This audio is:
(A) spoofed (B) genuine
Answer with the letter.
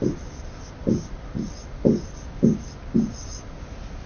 B